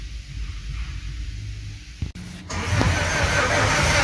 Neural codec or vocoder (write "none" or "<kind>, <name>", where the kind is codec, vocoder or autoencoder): none